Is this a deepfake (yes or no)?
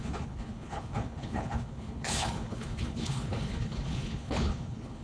yes